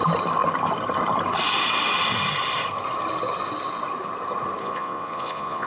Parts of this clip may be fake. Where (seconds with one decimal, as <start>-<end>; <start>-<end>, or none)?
4.6-5.7